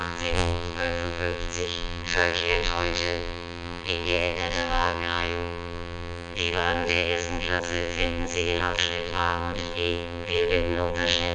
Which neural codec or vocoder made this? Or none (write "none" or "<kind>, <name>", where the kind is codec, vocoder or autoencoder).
vocoder, BigVGAN v2